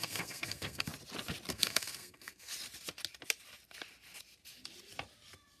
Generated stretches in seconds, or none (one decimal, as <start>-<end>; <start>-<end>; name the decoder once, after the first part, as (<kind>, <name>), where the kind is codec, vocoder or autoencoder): 0.0-0.9 (codec, SNAC); 1.5-2.5